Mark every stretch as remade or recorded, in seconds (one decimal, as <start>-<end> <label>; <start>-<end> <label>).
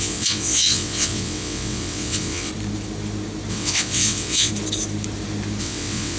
0.0-2.5 remade; 2.5-3.5 recorded; 3.5-4.5 remade; 4.5-5.6 recorded; 5.6-6.2 remade